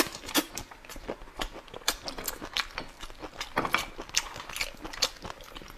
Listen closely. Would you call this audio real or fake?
real